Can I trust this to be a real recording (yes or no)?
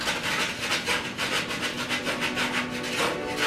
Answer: yes